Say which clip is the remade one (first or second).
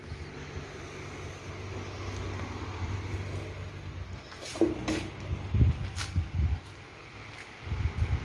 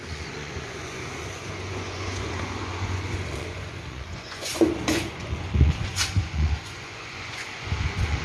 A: second